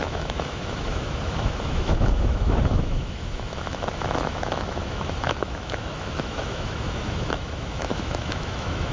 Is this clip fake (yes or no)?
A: yes